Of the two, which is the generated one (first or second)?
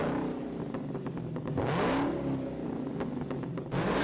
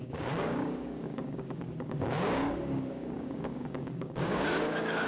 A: second